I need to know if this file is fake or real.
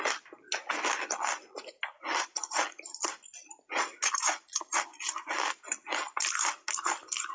real